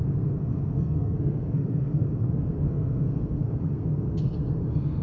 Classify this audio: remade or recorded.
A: remade